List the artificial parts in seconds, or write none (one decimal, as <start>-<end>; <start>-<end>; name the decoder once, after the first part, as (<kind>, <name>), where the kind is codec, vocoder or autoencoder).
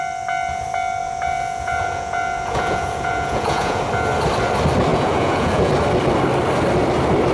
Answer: 1.0-3.8 (vocoder, Vocos); 4.9-5.7